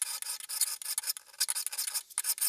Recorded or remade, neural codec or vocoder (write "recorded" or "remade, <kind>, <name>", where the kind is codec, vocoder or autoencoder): recorded